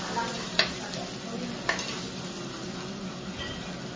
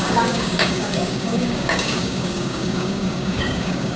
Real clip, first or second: first